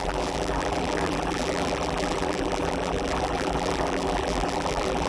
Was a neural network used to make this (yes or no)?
yes